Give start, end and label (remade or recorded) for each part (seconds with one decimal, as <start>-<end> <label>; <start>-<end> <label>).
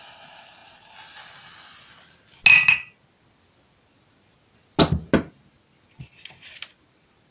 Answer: 0.0-7.3 recorded